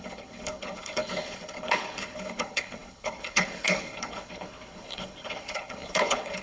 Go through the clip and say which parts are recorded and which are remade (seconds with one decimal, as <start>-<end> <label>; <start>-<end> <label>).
0.0-6.4 remade